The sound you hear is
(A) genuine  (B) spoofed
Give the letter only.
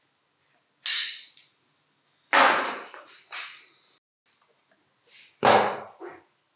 A